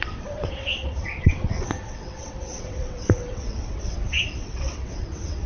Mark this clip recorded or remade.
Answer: remade